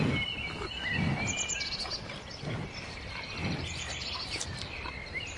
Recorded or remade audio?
recorded